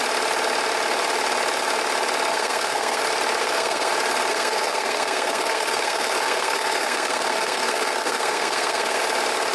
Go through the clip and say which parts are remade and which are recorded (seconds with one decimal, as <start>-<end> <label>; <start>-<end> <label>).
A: 0.0-2.3 recorded; 2.3-3.0 remade; 3.0-3.4 recorded; 3.4-3.9 remade; 3.9-4.3 recorded; 4.3-9.0 remade; 9.0-9.5 recorded